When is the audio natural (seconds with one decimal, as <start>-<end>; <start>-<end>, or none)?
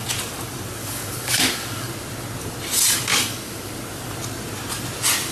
0.0-0.8; 1.9-3.1; 3.7-5.3